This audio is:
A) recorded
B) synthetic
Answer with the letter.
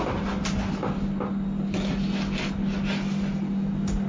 A